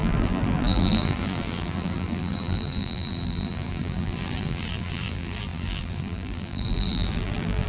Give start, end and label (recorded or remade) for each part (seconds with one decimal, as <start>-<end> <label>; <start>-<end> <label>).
0.0-7.7 remade